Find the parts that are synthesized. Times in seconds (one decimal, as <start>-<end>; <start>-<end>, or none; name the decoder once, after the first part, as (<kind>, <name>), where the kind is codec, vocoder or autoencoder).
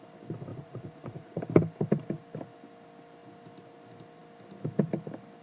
0.5-1.4 (vocoder, Vocos)